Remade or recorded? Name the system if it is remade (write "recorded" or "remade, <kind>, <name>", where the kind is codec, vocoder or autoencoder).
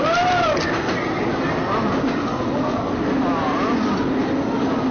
recorded